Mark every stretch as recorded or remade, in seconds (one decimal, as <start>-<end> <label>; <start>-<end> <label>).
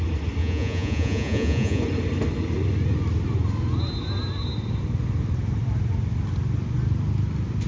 0.0-0.4 recorded; 0.4-1.8 remade; 1.8-7.7 recorded